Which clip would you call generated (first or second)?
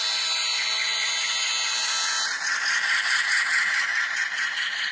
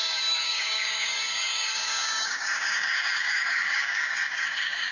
second